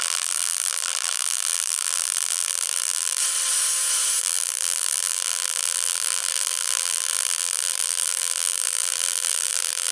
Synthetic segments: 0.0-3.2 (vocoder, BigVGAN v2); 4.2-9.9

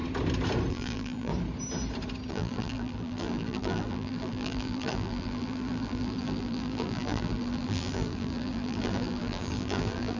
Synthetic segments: 0.7-1.3 (vocoder, BigVGAN v2); 2.3-10.2